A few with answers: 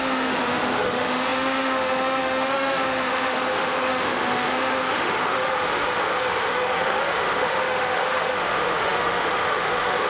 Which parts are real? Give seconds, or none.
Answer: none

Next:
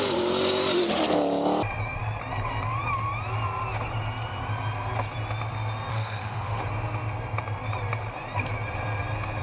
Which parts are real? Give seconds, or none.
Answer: 0.0-5.9; 6.6-9.4

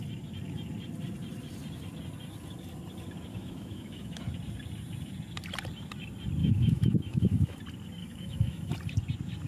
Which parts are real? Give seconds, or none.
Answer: 0.0-3.3; 4.2-6.4; 7.6-8.0; 8.7-9.5

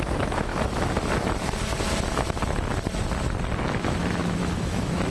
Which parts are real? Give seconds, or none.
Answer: 0.5-3.6

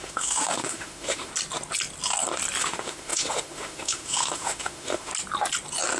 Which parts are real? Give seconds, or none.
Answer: 1.3-2.6; 5.1-6.0

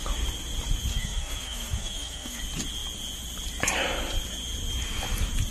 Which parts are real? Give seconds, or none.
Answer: 0.0-0.9; 2.4-5.5

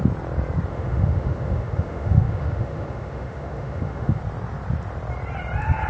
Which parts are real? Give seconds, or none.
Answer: 0.0-0.7; 4.2-5.9